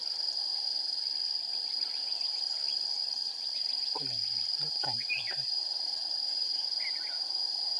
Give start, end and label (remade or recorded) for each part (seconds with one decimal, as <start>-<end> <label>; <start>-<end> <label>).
0.0-4.6 recorded; 4.6-7.8 remade